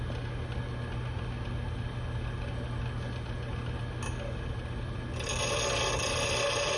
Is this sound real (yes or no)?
yes